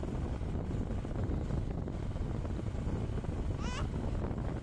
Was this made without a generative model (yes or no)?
yes